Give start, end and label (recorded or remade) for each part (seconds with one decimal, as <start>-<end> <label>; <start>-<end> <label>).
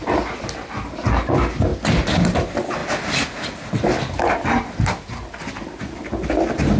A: 0.0-6.8 recorded